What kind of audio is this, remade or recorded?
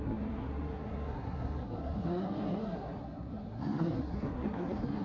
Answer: remade